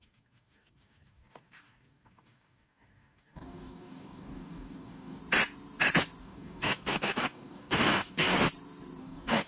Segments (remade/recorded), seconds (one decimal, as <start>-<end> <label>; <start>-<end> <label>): 0.0-5.2 remade; 5.2-6.2 recorded; 6.2-8.3 remade; 8.3-9.0 recorded; 9.0-9.5 remade